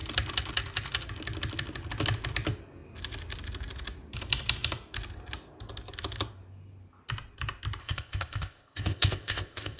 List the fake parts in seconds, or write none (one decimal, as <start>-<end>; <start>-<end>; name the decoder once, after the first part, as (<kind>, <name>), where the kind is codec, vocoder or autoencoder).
7.8-9.8 (codec, ZipCodec)